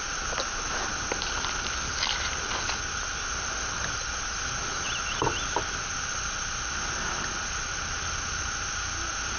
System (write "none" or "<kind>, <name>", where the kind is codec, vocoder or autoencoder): none